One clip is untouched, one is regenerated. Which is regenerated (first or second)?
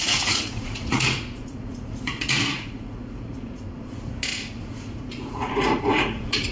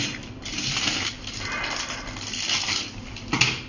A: first